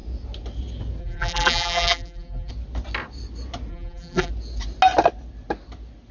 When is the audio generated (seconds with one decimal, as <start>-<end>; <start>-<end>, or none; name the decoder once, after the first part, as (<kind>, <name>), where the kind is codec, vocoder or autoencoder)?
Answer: 1.0-2.5 (vocoder, BigVGAN v2); 3.7-4.3